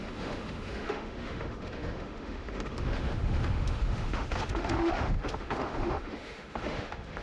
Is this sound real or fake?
fake